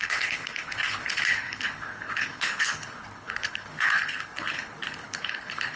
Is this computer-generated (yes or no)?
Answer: yes